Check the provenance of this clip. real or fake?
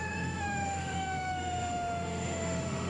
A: fake